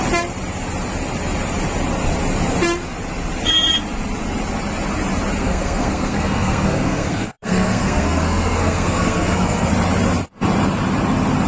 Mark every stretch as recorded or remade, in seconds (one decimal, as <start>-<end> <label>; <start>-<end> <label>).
0.0-5.4 recorded; 5.4-9.7 remade; 9.7-11.5 recorded